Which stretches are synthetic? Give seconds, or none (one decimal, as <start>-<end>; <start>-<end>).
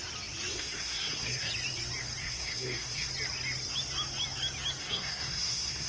0.5-1.5; 2.2-3.1; 4.8-5.9